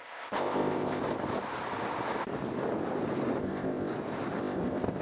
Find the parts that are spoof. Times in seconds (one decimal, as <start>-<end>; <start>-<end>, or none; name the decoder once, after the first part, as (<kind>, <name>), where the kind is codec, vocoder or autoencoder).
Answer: 0.0-1.0 (codec, ZipCodec); 3.4-3.9; 4.4-5.0